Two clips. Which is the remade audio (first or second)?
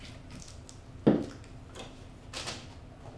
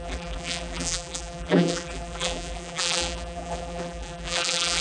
second